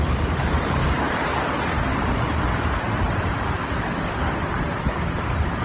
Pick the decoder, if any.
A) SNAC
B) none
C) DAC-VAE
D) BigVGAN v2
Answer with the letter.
D